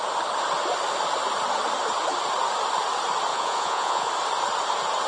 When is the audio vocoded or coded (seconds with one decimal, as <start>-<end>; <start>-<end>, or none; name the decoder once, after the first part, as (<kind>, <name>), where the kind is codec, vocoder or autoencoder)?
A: 3.3-4.1 (vocoder, Vocos)